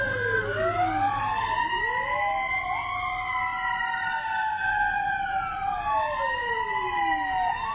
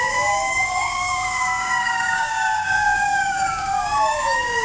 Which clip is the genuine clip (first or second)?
first